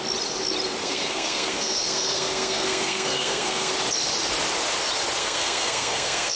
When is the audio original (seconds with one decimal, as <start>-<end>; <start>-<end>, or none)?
0.0-0.8; 3.7-5.2